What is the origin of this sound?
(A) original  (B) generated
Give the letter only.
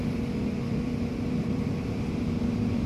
B